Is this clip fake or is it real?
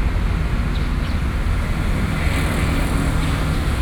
real